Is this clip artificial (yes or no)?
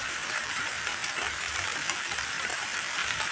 yes